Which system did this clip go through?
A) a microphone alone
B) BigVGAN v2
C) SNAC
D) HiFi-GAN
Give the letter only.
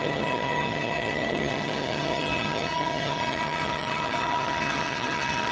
D